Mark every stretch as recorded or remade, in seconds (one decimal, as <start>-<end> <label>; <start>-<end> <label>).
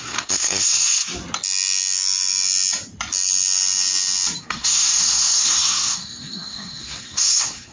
0.0-1.1 remade; 1.1-4.4 recorded; 4.4-7.7 remade